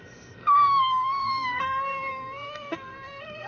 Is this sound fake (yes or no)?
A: yes